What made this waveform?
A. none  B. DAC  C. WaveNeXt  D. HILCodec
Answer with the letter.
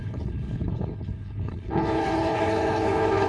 D